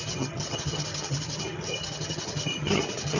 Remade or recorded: remade